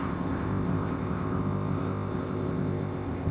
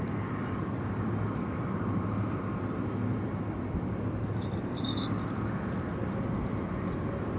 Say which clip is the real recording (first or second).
second